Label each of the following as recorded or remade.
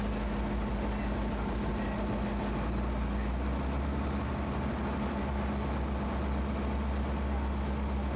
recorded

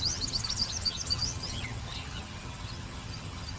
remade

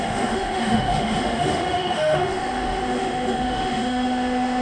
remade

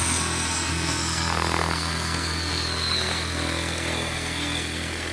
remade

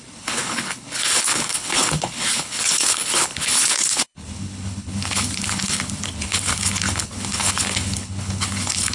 remade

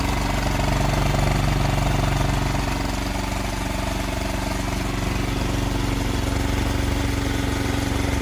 recorded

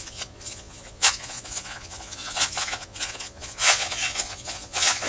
remade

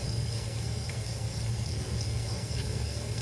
remade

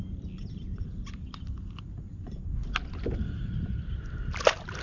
recorded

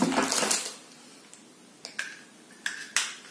recorded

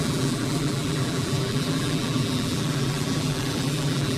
remade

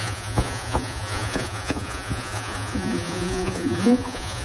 remade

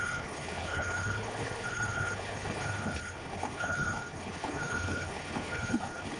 remade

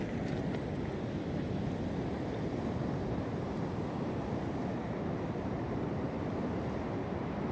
recorded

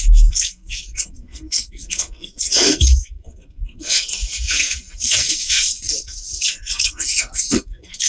remade